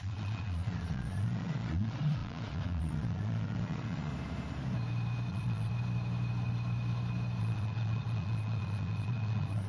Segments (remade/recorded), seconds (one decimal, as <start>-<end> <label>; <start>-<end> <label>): 0.0-4.1 remade; 4.1-5.3 recorded; 5.3-5.7 remade; 5.7-7.4 recorded; 7.4-9.7 remade